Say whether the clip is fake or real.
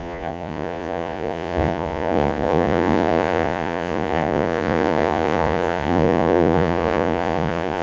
fake